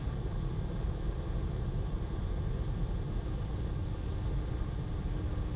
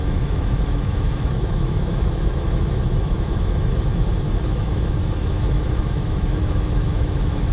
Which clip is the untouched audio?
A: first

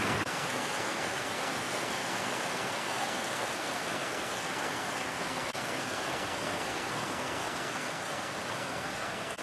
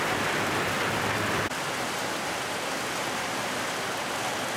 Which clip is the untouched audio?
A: second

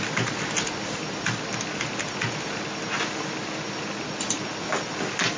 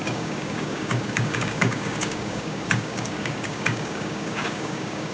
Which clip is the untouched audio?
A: first